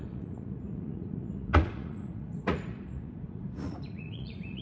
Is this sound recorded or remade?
remade